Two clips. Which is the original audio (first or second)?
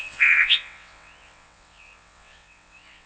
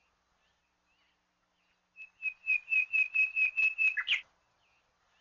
second